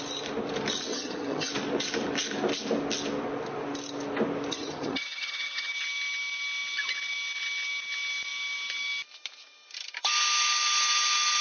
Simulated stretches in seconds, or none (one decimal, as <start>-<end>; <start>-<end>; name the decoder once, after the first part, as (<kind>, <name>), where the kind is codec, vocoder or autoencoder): 0.9-1.5 (vocoder, HiFi-GAN); 4.5-5.7